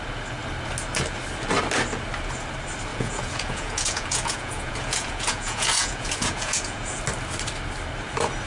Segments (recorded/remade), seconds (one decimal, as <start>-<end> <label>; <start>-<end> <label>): 0.0-2.9 recorded; 2.9-7.0 remade; 7.0-8.5 recorded